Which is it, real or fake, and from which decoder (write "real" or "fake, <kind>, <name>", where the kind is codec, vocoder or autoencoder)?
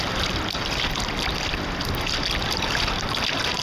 real